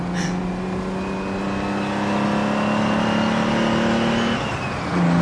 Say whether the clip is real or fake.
real